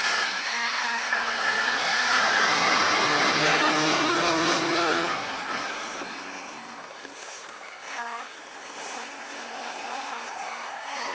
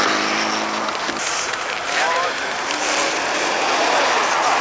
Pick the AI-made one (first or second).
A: first